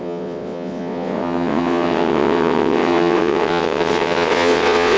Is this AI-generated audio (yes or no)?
yes